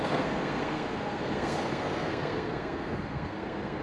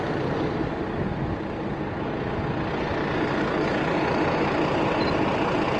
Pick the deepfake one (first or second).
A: first